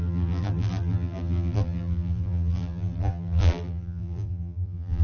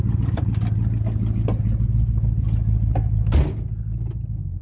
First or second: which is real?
second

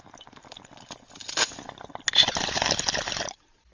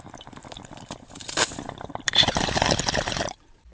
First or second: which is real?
first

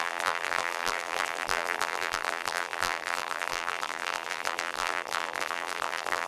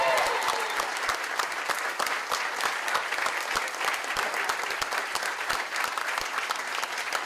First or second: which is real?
second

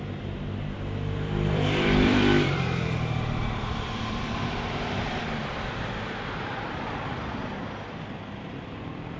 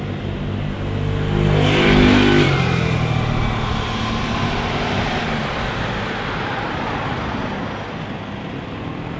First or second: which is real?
second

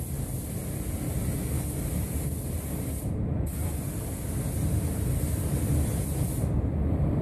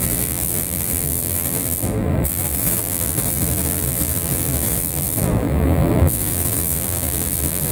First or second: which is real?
first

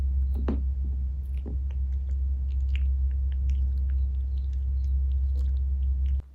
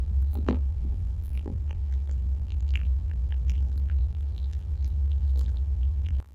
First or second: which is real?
first